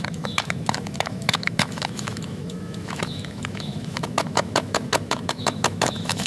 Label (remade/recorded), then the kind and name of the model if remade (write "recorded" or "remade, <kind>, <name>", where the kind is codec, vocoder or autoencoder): remade, autoencoder, DAC-VAE